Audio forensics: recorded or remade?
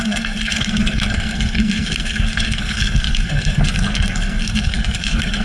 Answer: remade